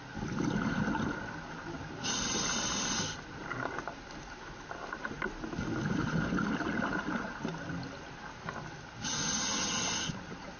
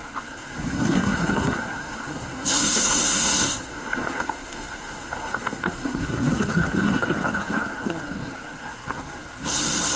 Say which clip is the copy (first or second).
second